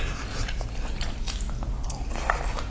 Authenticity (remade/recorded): recorded